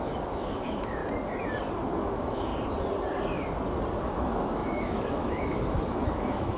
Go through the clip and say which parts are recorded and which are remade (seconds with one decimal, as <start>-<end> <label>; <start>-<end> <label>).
0.0-1.0 remade; 1.0-1.9 recorded; 1.9-2.5 remade; 2.5-4.0 recorded; 4.0-6.6 remade